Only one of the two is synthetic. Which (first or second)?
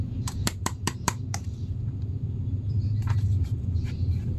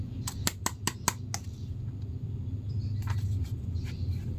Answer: first